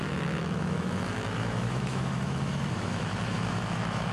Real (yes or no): no